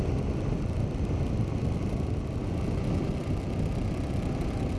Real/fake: real